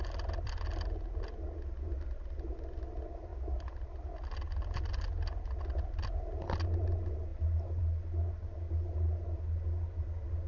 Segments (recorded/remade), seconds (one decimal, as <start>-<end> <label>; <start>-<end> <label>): 0.0-10.5 recorded